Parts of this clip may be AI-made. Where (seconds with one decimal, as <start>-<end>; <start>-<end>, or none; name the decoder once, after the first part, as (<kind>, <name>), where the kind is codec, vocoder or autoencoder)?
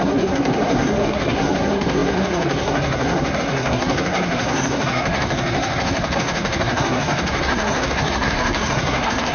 0.0-9.3 (codec, SNAC)